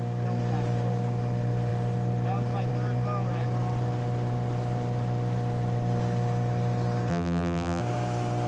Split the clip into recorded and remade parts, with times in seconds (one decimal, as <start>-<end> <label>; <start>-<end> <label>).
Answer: 0.0-7.1 recorded; 7.1-7.8 remade; 7.8-8.5 recorded